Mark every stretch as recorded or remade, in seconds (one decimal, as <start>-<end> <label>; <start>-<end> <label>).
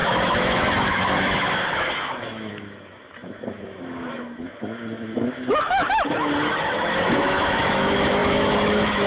0.0-9.1 remade